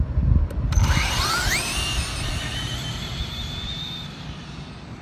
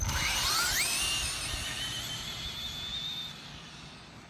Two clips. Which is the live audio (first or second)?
second